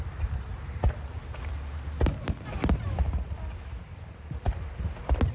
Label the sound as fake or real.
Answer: real